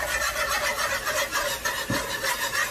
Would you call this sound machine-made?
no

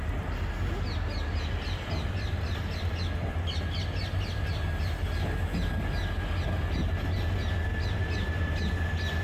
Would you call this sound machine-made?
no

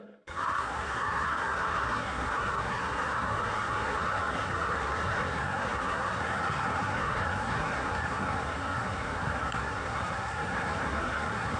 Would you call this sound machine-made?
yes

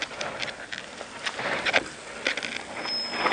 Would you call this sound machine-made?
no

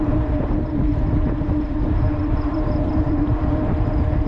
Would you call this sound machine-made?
yes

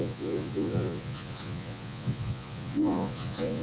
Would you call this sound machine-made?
yes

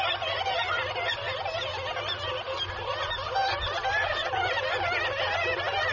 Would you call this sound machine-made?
no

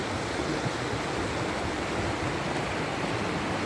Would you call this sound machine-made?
no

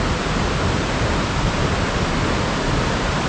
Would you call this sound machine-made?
no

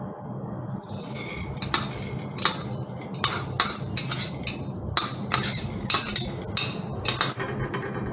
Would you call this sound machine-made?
no